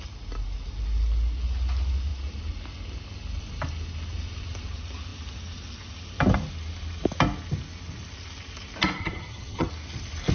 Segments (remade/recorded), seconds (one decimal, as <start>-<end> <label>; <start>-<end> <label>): 0.0-9.0 recorded; 9.0-9.7 remade; 9.7-10.3 recorded